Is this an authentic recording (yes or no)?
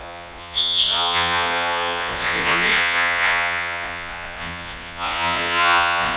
no